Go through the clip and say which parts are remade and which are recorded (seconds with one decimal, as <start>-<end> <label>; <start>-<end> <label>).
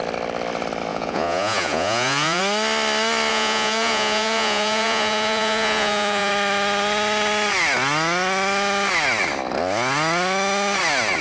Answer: 0.0-0.9 recorded; 0.9-2.4 remade; 2.4-3.3 recorded; 3.3-6.3 remade; 6.3-11.2 recorded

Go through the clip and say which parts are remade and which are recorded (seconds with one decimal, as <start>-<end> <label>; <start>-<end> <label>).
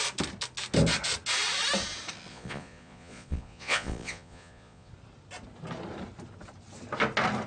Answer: 0.0-2.3 recorded; 2.3-4.9 remade; 4.9-7.5 recorded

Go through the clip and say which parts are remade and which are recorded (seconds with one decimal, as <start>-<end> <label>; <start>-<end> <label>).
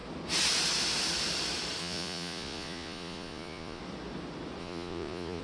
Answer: 0.0-1.8 recorded; 1.8-3.8 remade; 3.8-4.6 recorded; 4.6-5.4 remade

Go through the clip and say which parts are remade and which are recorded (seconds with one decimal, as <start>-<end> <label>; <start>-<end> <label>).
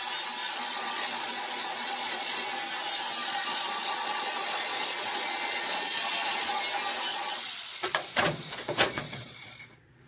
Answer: 0.0-0.4 recorded; 0.4-2.4 remade; 2.4-3.2 recorded; 3.2-6.6 remade; 6.6-7.1 recorded; 7.1-10.1 remade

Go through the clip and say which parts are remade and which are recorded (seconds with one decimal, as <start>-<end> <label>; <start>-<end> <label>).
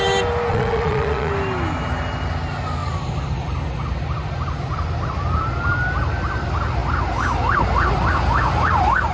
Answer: 0.0-0.5 recorded; 0.5-1.3 remade; 1.3-9.1 recorded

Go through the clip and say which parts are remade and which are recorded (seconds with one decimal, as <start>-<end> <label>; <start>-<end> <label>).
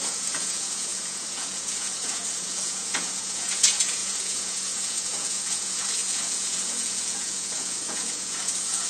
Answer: 0.0-8.9 remade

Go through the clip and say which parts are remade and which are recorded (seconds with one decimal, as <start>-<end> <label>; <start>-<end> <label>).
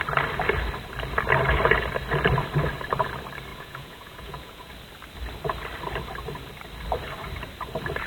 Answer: 0.0-3.5 recorded; 3.5-4.7 remade; 4.7-8.1 recorded